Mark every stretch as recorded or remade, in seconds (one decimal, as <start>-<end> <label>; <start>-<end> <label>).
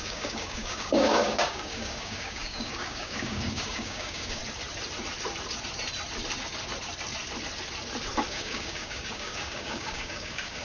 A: 0.0-4.4 remade; 4.4-8.3 recorded; 8.3-10.6 remade